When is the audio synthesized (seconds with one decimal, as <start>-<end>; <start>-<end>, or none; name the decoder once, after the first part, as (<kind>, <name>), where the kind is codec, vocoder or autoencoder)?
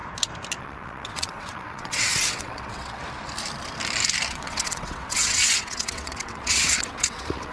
0.6-3.0 (vocoder, WaveNeXt); 4.3-7.5